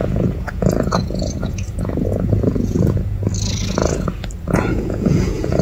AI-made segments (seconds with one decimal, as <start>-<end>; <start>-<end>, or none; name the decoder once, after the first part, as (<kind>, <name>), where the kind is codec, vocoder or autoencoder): 0.0-3.2 (vocoder, Vocos); 4.5-5.6